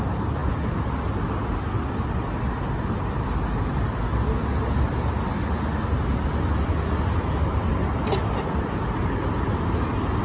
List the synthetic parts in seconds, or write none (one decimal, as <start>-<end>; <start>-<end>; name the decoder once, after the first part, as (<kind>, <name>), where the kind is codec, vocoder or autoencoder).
none